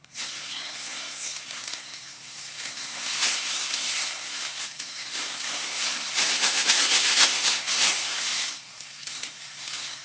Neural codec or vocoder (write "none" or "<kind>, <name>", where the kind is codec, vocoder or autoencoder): codec, SNAC